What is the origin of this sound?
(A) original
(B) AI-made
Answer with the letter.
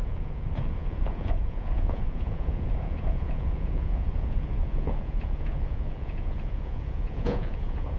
B